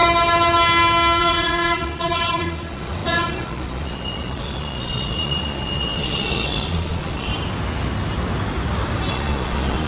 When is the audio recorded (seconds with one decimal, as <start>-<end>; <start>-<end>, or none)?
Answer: 0.0-1.2; 7.3-9.1